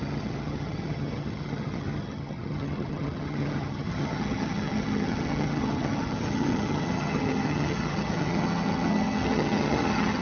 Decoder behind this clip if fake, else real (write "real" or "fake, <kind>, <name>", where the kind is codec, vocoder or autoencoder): fake, vocoder, HiFi-GAN